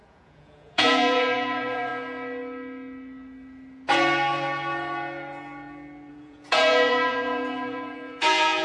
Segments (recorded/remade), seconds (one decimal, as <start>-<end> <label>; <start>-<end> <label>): 0.0-1.9 remade; 1.9-6.1 recorded; 6.1-8.6 remade